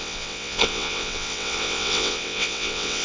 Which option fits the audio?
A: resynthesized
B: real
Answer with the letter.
A